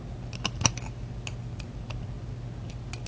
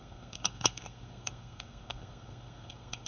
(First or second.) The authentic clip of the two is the first